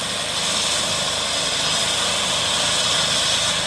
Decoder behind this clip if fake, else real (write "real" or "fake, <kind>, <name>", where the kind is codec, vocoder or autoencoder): real